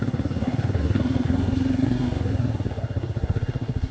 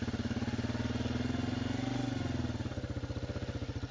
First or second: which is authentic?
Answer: second